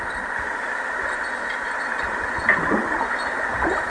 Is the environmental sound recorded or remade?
recorded